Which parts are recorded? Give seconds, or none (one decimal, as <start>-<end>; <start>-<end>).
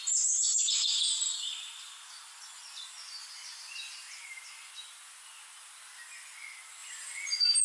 0.0-6.8